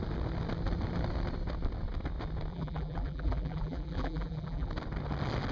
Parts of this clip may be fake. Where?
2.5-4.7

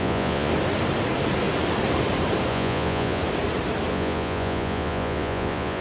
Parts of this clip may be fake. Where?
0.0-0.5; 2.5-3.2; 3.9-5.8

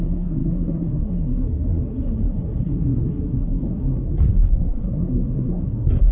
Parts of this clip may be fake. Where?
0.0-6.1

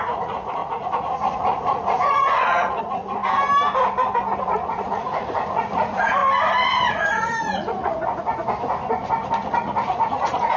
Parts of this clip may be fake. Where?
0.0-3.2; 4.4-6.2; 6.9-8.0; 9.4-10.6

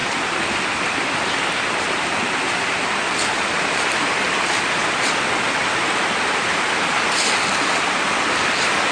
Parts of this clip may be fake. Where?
none

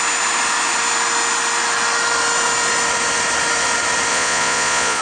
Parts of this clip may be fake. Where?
4.1-5.0